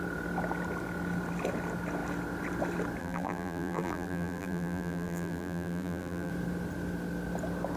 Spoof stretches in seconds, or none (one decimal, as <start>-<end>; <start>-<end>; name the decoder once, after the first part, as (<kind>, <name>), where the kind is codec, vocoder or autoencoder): 3.0-6.3 (vocoder, BigVGAN v2)